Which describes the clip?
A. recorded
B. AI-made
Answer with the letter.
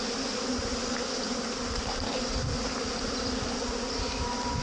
A